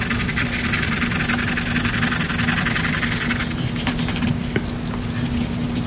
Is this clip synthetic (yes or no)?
no